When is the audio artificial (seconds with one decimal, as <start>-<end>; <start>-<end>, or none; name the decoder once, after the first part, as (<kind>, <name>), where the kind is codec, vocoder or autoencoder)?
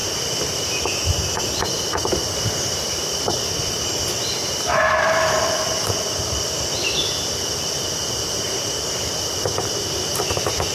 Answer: none